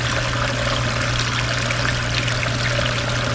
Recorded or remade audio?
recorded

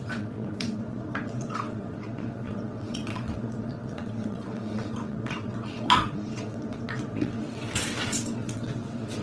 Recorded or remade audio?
remade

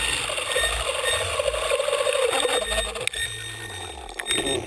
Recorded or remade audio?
recorded